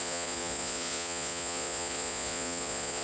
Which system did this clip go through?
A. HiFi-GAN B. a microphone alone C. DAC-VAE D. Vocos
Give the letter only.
D